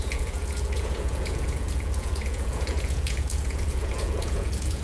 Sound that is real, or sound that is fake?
fake